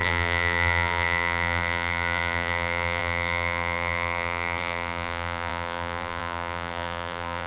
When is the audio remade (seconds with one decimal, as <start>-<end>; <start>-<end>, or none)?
0.0-7.5